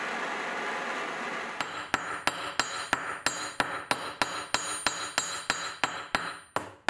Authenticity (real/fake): real